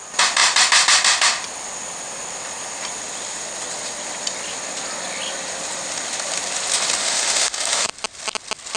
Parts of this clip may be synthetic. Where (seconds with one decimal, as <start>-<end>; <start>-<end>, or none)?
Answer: 7.0-7.9